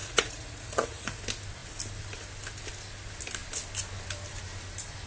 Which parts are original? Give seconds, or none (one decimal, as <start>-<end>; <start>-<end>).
1.2-5.1